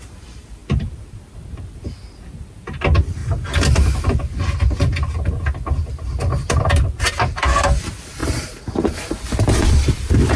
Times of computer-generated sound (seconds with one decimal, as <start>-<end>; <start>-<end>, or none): none